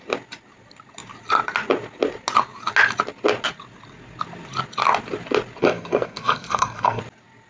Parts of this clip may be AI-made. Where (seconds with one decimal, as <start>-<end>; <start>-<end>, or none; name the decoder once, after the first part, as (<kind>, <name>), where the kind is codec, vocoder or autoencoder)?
5.6-7.0 (codec, SNAC)